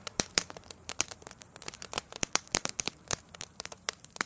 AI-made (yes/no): yes